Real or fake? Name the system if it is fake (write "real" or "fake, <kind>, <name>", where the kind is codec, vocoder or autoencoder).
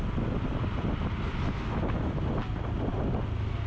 real